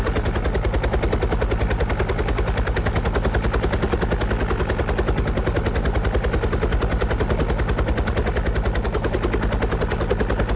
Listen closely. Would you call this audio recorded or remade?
recorded